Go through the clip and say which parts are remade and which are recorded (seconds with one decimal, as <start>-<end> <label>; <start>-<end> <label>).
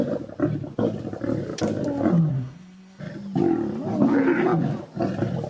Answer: 0.0-2.3 recorded; 2.3-3.0 remade; 3.0-5.5 recorded